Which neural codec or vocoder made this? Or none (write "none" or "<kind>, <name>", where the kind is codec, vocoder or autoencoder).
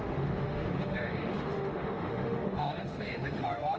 autoencoder, DAC-VAE